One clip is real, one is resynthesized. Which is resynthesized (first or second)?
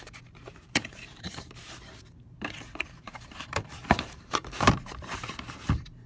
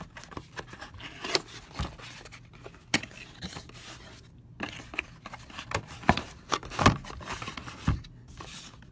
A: first